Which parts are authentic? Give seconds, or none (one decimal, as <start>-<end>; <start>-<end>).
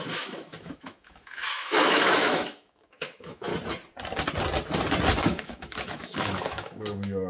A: 3.5-5.2